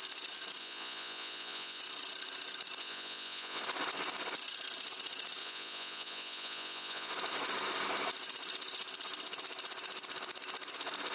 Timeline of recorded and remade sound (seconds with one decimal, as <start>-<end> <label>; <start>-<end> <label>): 0.0-0.6 recorded; 0.6-1.8 remade; 1.8-2.8 recorded; 2.8-3.6 remade; 3.6-5.4 recorded; 5.4-7.1 remade; 7.1-11.1 recorded